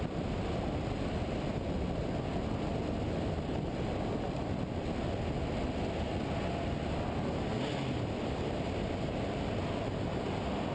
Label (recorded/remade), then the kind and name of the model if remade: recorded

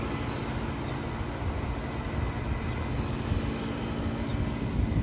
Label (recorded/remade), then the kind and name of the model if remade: recorded